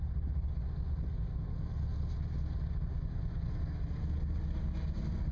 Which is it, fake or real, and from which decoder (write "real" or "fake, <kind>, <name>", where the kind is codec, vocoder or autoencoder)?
real